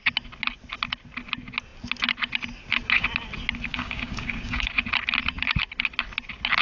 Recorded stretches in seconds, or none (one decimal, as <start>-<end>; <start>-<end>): 0.0-3.7; 4.7-6.6